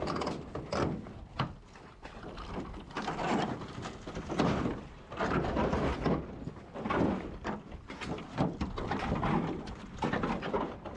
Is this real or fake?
real